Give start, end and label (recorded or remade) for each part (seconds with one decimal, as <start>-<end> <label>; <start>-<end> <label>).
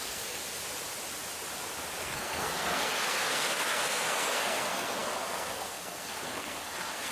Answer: 0.0-0.4 remade; 0.4-2.0 recorded; 2.0-7.1 remade